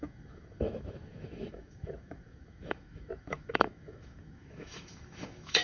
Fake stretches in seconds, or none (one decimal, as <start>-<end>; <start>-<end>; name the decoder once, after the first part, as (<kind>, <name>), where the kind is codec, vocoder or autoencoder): 0.0-5.6 (autoencoder, DAC-VAE)